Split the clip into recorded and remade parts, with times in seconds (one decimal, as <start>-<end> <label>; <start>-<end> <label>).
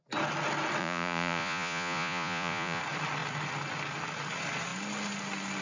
0.0-0.8 recorded; 0.8-2.8 remade; 2.8-5.6 recorded